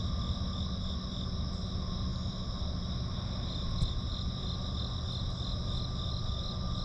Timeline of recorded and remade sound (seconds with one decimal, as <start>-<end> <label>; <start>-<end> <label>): 0.0-6.8 recorded